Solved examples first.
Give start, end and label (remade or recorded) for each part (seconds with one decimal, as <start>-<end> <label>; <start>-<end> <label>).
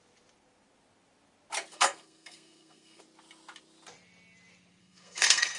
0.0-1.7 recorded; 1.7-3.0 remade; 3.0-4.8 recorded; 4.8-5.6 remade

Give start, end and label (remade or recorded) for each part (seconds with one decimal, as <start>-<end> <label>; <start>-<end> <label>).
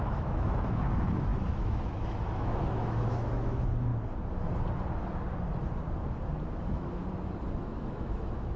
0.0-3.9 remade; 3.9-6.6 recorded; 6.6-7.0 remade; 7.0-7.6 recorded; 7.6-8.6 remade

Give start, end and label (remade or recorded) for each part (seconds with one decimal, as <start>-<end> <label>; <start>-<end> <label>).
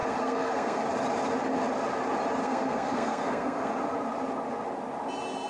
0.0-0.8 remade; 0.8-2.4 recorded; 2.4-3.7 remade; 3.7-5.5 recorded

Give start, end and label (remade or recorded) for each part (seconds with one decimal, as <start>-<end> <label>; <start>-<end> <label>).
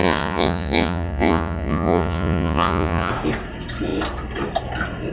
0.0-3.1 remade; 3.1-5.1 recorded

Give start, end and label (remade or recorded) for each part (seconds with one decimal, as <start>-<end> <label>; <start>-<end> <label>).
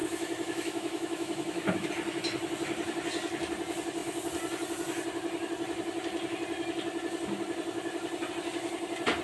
0.0-1.9 remade; 1.9-9.2 recorded